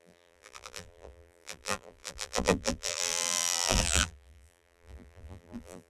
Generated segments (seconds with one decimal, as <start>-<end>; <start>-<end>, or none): 0.0-5.9